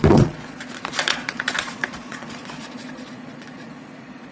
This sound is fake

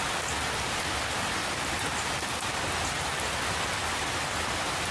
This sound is real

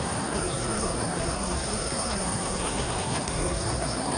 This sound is fake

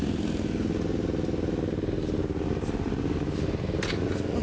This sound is real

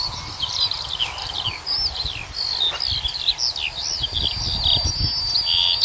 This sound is real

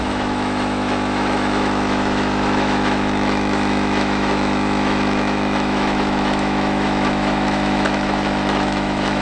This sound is fake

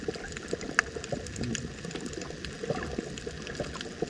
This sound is real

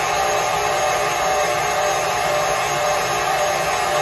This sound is real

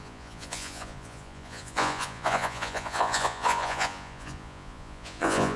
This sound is fake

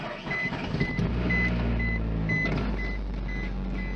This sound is real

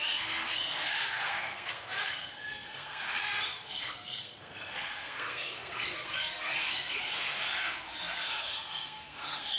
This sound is fake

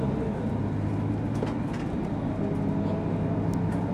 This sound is real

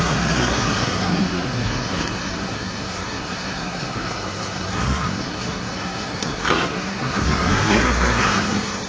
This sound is fake